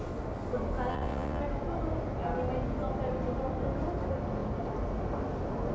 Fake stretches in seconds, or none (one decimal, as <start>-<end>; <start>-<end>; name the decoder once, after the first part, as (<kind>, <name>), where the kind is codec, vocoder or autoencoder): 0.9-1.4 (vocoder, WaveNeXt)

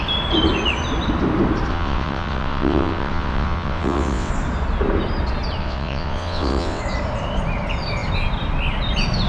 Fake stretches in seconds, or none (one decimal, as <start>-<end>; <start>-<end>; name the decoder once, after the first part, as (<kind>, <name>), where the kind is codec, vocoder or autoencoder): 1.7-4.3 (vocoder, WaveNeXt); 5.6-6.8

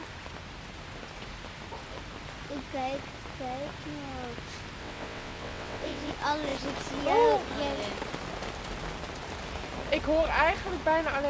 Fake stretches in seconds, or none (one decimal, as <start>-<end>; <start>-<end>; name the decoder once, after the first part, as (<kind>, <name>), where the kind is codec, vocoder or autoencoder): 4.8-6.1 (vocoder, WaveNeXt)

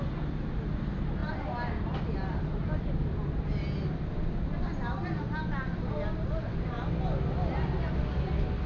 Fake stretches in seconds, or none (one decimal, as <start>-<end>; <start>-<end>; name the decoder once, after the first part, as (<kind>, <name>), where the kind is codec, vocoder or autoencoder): none

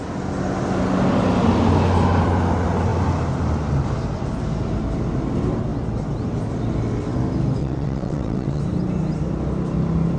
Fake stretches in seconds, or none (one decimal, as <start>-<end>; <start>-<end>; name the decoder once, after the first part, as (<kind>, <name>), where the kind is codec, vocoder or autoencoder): 7.6-8.6 (vocoder, WaveNeXt)

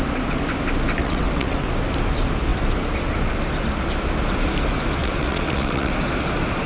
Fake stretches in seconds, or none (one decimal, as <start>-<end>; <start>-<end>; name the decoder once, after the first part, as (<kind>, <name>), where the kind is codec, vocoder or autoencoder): 1.0-1.7 (vocoder, WaveNeXt); 5.0-5.9

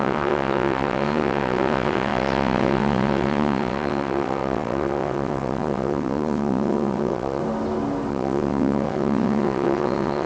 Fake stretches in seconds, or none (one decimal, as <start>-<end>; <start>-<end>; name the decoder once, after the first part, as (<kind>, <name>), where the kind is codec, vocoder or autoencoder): 0.0-7.4 (vocoder, WaveNeXt); 8.1-10.3

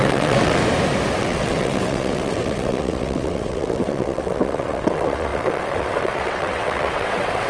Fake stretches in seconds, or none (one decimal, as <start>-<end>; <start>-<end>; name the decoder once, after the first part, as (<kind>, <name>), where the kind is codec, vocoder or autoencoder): 0.0-0.6 (vocoder, WaveNeXt); 1.2-7.5